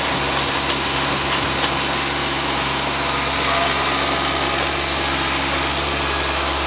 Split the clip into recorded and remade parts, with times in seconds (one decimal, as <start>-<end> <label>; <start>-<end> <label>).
0.0-2.2 recorded; 2.2-3.3 remade; 3.3-6.7 recorded